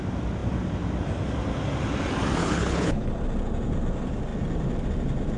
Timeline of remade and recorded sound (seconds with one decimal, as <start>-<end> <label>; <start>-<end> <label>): 0.0-2.4 recorded; 2.4-3.1 remade; 3.1-5.4 recorded